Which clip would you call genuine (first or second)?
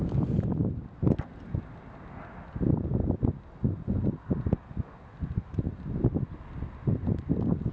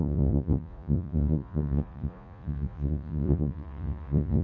first